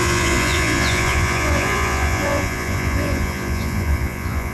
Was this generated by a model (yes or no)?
yes